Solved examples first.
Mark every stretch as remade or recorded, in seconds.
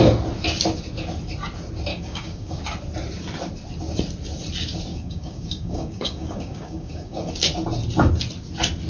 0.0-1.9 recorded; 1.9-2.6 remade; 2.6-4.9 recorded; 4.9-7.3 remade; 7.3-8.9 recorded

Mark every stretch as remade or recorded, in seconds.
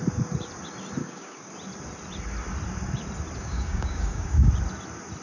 0.0-1.0 recorded; 1.0-1.5 remade; 1.5-3.4 recorded; 3.4-4.5 remade; 4.5-5.2 recorded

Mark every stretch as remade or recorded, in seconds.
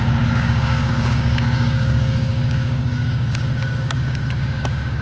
0.0-5.0 remade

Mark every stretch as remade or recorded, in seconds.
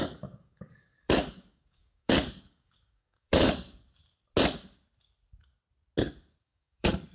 0.0-4.0 remade; 4.0-6.4 recorded; 6.4-7.1 remade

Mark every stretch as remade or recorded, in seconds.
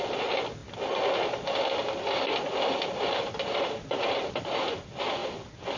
0.0-5.8 recorded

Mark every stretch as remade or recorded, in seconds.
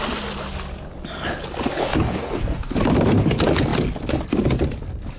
0.0-1.8 recorded; 1.8-2.7 remade; 2.7-5.2 recorded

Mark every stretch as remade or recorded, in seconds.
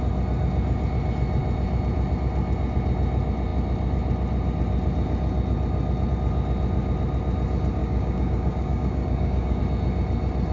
0.0-7.8 recorded; 7.8-9.6 remade; 9.6-10.5 recorded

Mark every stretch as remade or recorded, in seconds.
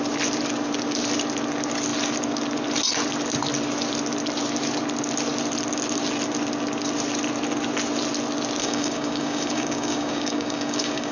0.0-8.6 recorded; 8.6-11.1 remade